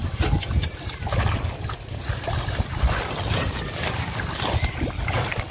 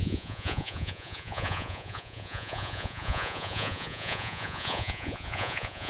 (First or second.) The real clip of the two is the first